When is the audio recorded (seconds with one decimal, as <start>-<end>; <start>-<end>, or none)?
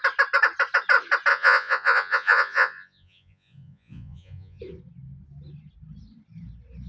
0.0-1.3; 4.6-6.9